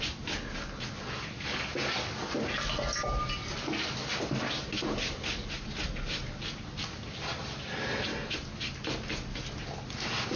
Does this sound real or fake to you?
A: real